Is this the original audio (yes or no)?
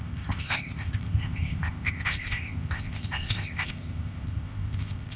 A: no